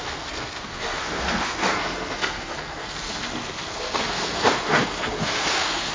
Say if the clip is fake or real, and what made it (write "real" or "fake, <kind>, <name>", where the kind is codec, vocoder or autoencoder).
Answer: fake, codec, SNAC